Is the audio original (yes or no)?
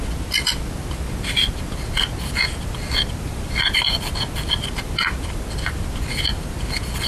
yes